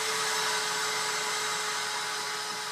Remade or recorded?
recorded